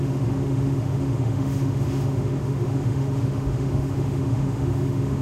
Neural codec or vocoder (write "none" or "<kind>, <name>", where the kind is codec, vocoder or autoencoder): autoencoder, DAC-VAE